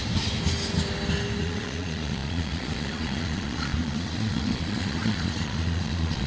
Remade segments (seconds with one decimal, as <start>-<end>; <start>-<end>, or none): 1.4-6.3